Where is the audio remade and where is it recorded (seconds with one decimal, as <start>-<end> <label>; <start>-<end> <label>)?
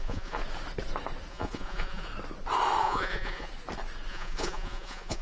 0.0-0.4 remade; 0.4-1.3 recorded; 1.3-2.1 remade; 2.1-2.8 recorded; 2.8-3.5 remade; 3.5-4.1 recorded; 4.1-5.2 remade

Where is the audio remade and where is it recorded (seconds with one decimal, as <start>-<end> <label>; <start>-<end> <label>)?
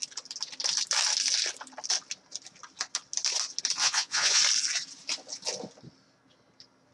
0.0-3.8 recorded; 3.8-4.4 remade; 4.4-6.9 recorded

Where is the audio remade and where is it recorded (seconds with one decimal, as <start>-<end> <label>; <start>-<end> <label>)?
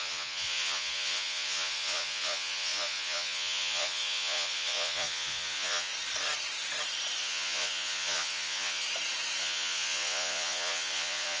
0.0-5.9 remade; 5.9-7.2 recorded; 7.2-8.8 remade; 8.8-9.4 recorded; 9.4-11.4 remade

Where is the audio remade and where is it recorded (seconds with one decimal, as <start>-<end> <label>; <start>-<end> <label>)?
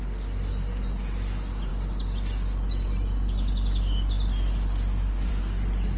0.0-6.0 recorded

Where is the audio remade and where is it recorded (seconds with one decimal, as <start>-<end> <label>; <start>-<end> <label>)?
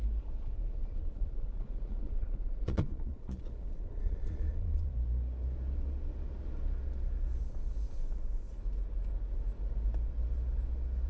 0.0-0.8 recorded; 0.8-4.9 remade; 4.9-11.1 recorded